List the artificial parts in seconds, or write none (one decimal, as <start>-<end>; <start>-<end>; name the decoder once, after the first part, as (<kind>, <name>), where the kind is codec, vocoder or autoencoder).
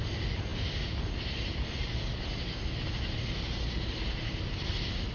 none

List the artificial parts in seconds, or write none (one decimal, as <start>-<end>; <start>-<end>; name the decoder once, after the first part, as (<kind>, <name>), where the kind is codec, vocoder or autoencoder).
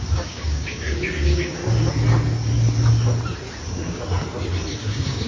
0.0-1.6 (codec, DAC); 4.8-5.3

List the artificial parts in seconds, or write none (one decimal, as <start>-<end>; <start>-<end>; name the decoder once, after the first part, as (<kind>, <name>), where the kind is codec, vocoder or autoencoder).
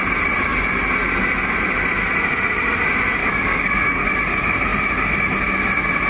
3.2-4.1 (codec, DAC)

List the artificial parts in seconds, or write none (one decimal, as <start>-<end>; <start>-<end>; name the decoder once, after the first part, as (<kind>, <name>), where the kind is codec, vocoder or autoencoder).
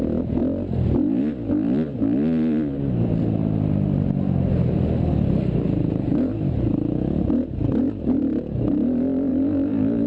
9.3-10.1 (codec, DAC)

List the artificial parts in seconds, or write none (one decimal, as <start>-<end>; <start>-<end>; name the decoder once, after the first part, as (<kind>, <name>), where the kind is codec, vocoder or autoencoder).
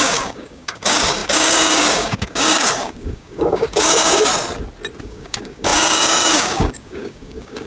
0.0-4.3 (codec, DAC); 5.0-7.7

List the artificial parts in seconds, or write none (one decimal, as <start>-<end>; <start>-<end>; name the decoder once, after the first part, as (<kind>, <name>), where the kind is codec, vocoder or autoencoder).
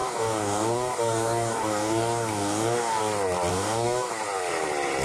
0.0-3.0 (codec, DAC); 3.5-4.1